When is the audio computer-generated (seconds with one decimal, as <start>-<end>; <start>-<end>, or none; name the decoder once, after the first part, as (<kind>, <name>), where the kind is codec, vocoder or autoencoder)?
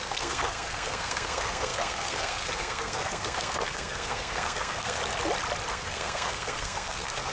0.0-5.0 (codec, SNAC); 5.7-7.3